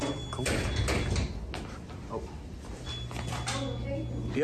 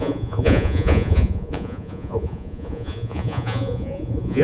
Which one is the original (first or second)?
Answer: first